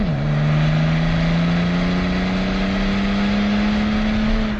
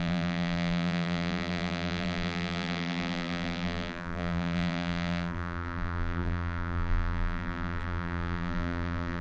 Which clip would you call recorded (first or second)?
first